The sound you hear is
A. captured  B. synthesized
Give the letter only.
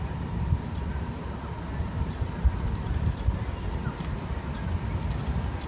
A